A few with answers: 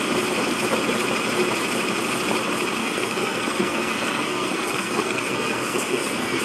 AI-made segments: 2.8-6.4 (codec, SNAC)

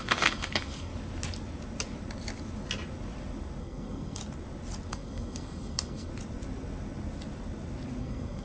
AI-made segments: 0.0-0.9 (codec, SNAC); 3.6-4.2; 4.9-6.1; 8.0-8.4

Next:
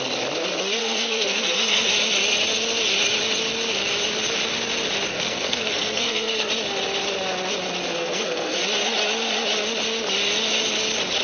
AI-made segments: 0.8-1.9 (codec, SNAC); 5.1-6.5; 8.0-8.6

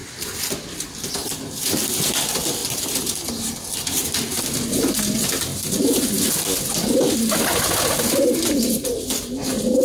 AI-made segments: none

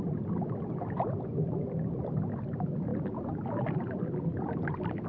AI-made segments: none

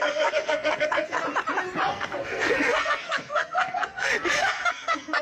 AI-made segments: 0.0-1.2 (codec, SNAC); 1.9-5.2

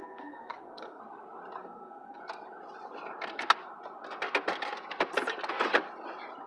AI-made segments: 0.0-1.0 (codec, SNAC); 1.6-2.2